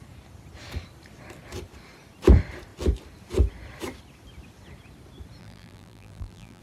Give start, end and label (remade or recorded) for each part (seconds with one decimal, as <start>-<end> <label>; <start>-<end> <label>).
0.0-5.4 recorded; 5.4-6.6 remade